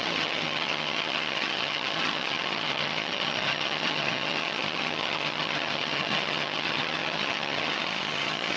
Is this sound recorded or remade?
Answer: remade